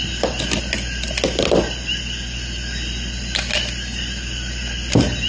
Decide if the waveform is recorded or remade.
recorded